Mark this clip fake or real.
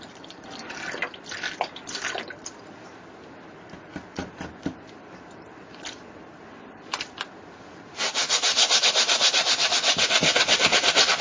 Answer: real